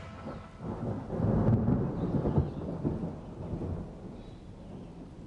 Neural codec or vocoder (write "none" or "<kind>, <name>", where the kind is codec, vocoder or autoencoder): none